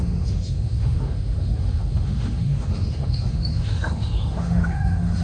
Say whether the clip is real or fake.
fake